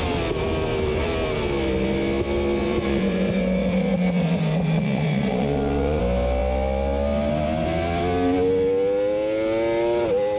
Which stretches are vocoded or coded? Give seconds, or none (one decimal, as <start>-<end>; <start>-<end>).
2.6-6.0